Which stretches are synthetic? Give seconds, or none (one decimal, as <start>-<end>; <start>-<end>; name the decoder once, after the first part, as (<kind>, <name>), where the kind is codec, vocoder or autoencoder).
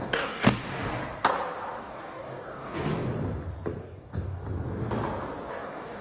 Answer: 0.0-0.9 (codec, DAC); 1.8-2.9; 3.8-4.4; 5.5-6.0